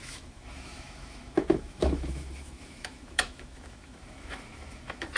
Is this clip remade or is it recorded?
remade